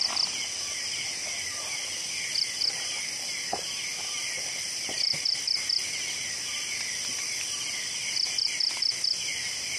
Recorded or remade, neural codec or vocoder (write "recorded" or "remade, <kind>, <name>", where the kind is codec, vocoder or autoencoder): recorded